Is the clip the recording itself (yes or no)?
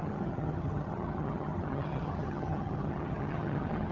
no